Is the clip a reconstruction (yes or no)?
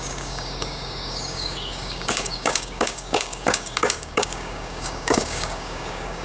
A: yes